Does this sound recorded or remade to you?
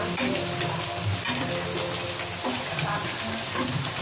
recorded